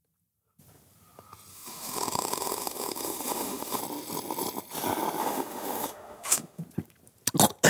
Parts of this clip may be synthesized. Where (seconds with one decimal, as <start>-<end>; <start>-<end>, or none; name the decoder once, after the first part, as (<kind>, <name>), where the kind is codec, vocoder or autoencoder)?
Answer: 1.5-3.8 (autoencoder, DAC-VAE); 5.2-6.6